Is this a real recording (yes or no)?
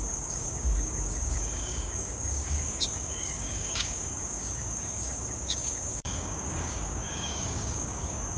no